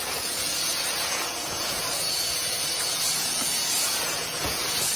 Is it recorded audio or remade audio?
remade